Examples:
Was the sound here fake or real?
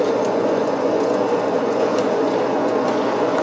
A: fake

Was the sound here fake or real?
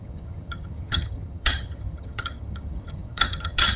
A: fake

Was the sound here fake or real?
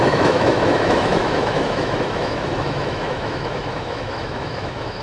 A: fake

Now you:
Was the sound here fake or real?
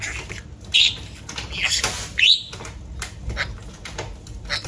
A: real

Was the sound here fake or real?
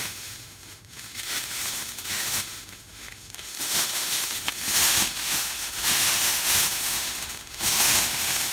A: fake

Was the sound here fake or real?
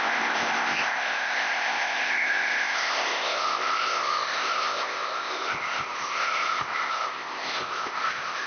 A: fake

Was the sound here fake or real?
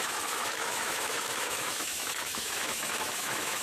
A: fake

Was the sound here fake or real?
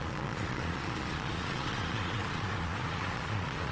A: fake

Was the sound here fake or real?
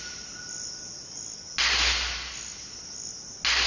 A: real